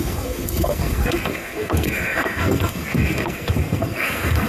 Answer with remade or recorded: remade